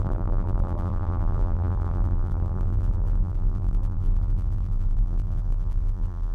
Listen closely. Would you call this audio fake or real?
fake